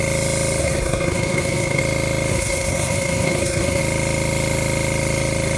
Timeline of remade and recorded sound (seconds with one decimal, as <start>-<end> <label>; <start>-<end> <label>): 0.0-0.6 recorded; 0.6-1.8 remade; 1.8-2.3 recorded; 2.3-3.8 remade; 3.8-5.6 recorded